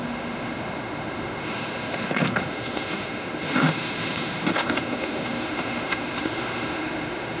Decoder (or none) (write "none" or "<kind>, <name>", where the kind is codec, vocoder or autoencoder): autoencoder, DAC-VAE